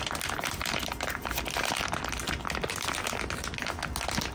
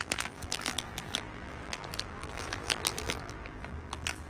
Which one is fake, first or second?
second